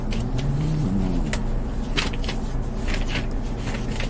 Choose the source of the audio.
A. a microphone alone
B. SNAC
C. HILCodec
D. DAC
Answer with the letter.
A